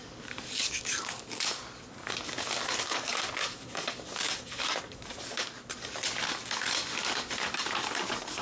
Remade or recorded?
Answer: remade